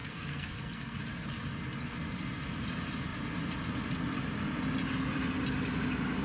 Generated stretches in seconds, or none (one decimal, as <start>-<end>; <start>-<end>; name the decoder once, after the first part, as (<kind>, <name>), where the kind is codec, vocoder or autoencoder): 0.0-1.0 (codec, SNAC)